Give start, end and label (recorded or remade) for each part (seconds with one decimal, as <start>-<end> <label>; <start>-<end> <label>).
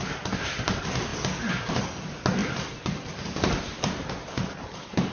0.0-2.4 recorded; 2.4-4.5 remade; 4.5-5.1 recorded